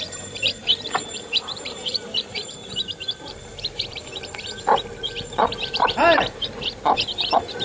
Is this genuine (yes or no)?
no